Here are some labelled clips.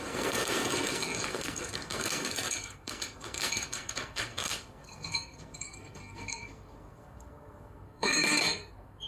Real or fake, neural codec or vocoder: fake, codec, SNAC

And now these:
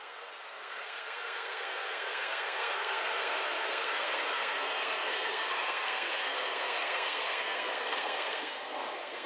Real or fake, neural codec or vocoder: fake, codec, SNAC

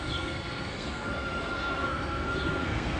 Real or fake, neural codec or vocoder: fake, codec, SNAC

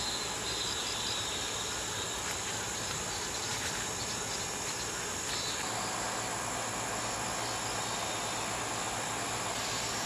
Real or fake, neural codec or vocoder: real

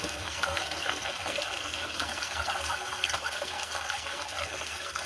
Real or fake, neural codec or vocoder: fake, codec, SNAC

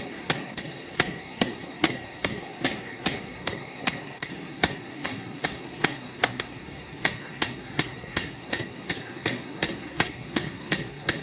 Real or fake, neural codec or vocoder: fake, codec, SNAC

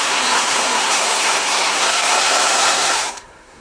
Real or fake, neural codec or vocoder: fake, codec, SNAC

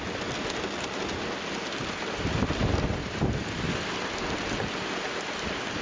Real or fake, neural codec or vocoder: real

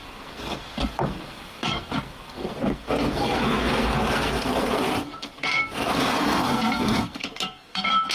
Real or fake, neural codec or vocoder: fake, codec, SNAC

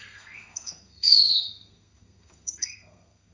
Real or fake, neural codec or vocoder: fake, codec, SNAC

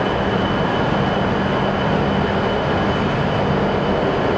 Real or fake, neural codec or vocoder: real